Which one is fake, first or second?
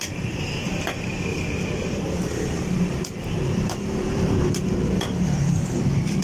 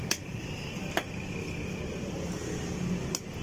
first